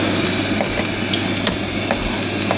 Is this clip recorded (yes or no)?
yes